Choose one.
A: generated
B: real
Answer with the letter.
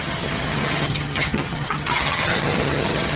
A